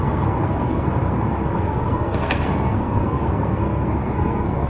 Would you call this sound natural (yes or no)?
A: no